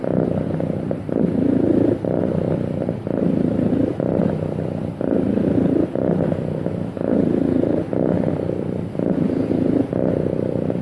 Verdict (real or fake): real